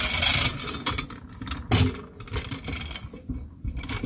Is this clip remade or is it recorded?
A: recorded